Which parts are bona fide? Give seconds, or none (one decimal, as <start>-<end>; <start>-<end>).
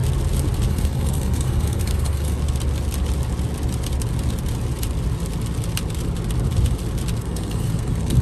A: 0.0-0.7; 2.4-7.2